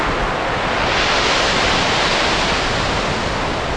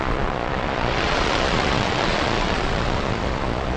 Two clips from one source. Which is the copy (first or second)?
second